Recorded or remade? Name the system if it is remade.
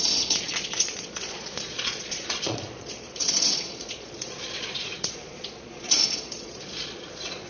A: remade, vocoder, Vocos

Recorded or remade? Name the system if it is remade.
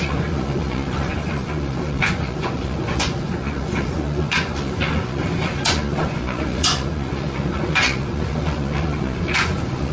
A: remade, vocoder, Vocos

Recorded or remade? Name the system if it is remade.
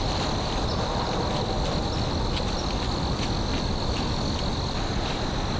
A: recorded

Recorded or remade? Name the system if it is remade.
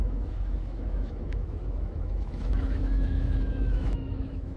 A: remade, autoencoder, DAC-VAE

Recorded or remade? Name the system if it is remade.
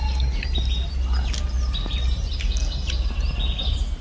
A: recorded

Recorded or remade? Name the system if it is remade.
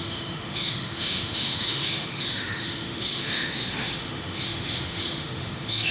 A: remade, autoencoder, DAC-VAE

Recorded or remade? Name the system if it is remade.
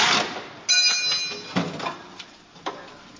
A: recorded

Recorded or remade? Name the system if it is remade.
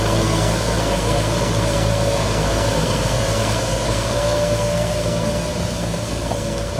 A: remade, codec, SNAC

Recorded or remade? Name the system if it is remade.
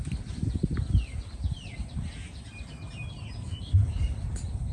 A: recorded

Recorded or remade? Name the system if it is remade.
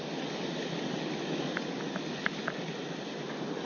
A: recorded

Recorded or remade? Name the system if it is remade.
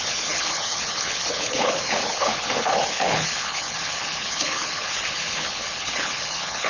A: remade, codec, HILCodec